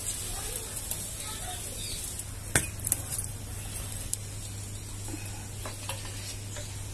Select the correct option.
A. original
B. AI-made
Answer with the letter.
A